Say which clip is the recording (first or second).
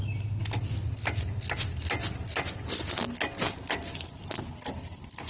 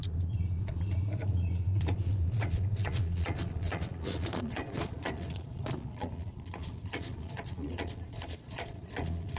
first